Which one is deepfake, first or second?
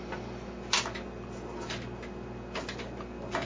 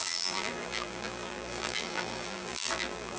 second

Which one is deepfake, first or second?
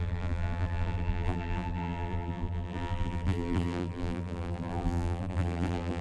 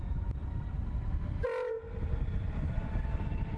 first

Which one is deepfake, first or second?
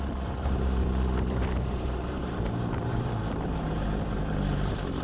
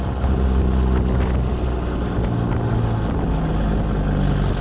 first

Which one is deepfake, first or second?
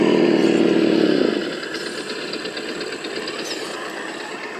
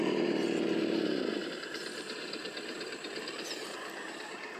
second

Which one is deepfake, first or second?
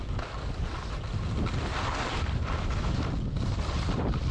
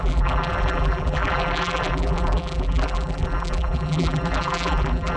second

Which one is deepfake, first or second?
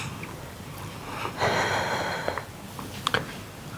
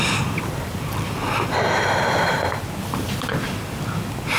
second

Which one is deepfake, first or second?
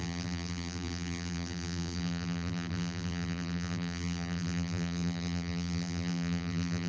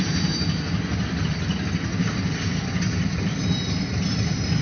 first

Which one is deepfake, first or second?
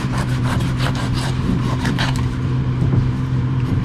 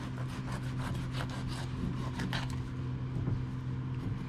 first